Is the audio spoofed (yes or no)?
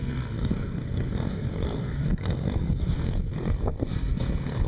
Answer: yes